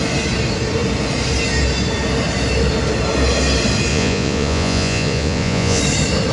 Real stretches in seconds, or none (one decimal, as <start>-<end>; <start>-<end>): 0.0-3.9; 5.8-6.3